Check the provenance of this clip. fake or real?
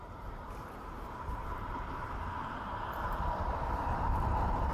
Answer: fake